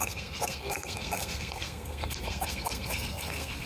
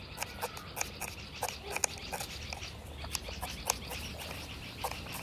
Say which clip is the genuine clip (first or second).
second